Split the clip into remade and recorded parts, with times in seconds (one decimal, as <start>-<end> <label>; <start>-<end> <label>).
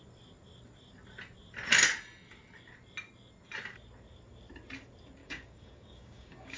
0.0-5.2 recorded; 5.2-6.6 remade